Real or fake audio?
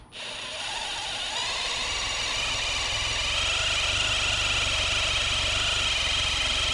real